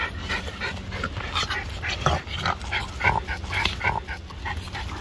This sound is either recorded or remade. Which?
recorded